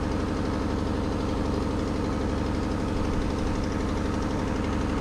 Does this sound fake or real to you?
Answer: real